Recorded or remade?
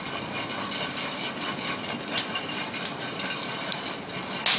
recorded